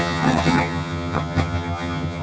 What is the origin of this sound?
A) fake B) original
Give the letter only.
A